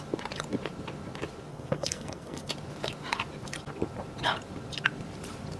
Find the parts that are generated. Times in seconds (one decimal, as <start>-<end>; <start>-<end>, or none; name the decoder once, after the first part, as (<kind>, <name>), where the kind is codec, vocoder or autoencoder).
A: 1.5-2.5 (codec, SNAC)